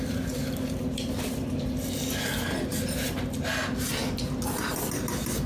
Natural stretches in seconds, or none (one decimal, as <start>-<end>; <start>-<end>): 0.0-5.5

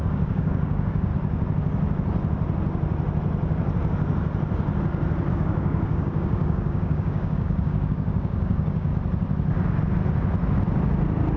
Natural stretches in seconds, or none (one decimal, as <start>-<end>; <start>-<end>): 1.1-5.3; 8.9-11.4

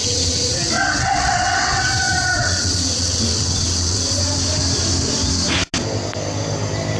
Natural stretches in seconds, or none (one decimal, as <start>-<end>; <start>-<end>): 4.2-7.0

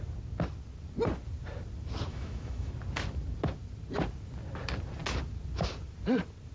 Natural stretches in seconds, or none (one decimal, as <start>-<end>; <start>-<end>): 0.0-2.1; 2.7-6.5

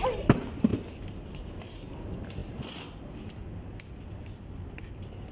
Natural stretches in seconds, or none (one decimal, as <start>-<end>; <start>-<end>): 0.0-5.3

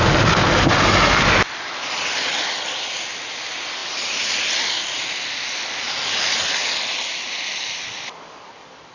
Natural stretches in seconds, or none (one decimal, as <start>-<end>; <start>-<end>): 0.0-8.9

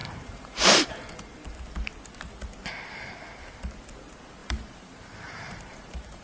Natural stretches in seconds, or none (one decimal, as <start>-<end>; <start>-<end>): 0.9-4.4

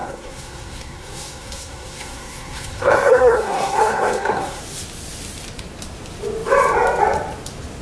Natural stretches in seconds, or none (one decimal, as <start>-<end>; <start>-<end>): 4.6-7.8